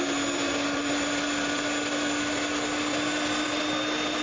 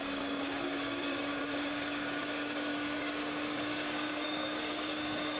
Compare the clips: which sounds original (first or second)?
first